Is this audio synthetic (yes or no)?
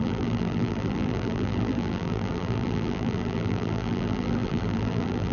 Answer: yes